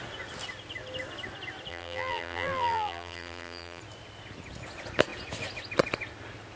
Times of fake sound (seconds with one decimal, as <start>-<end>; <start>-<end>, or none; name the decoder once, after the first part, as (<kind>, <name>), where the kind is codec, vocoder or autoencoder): 1.7-3.8 (vocoder, BigVGAN v2)